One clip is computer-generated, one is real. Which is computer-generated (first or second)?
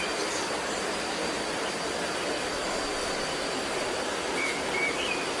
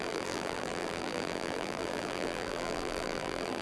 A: second